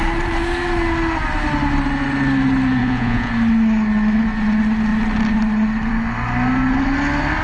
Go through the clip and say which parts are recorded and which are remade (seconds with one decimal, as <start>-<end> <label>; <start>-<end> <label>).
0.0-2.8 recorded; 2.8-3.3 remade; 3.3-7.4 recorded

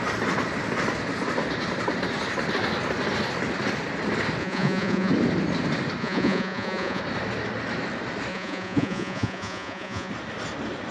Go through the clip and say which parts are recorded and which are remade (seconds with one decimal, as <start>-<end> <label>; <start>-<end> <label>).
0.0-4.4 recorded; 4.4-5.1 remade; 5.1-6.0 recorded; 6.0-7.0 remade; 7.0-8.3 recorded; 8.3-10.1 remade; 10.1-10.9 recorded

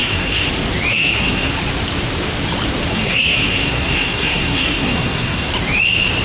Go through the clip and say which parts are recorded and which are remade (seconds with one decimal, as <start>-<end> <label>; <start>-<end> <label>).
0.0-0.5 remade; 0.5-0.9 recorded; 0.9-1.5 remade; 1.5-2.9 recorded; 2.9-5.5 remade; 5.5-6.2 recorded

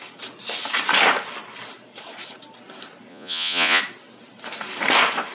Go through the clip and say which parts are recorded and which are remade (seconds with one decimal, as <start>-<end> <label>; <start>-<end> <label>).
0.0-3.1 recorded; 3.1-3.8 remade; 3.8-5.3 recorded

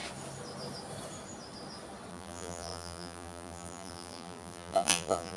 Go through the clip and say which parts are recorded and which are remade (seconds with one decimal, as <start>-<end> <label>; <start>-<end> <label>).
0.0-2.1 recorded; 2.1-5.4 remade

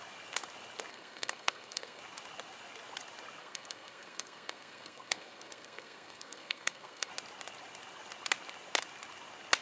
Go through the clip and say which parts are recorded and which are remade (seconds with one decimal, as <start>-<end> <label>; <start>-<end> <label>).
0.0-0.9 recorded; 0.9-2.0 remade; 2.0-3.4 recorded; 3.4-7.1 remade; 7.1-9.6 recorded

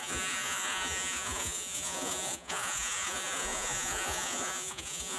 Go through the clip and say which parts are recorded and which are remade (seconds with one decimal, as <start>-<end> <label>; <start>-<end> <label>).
0.0-5.2 remade